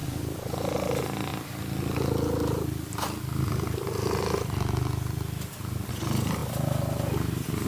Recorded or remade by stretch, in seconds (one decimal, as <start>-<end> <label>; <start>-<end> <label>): 0.0-0.6 remade; 0.6-7.7 recorded